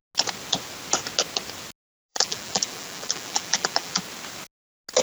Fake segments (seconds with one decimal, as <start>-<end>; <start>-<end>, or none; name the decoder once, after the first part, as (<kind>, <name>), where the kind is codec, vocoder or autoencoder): 2.1-4.0 (vocoder, BigVGAN v2)